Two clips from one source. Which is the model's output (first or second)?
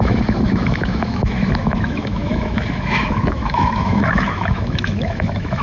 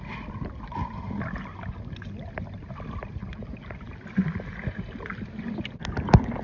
first